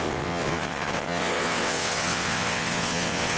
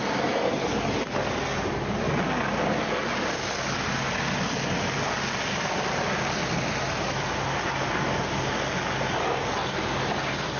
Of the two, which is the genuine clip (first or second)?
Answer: second